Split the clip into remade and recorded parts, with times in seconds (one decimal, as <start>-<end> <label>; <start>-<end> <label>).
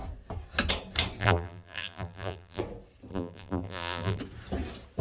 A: 0.0-1.2 recorded; 1.2-2.6 remade; 2.6-3.1 recorded; 3.1-4.2 remade; 4.2-5.0 recorded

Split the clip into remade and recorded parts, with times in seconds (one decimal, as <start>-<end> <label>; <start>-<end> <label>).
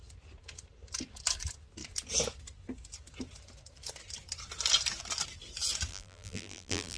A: 0.0-5.9 recorded; 5.9-7.0 remade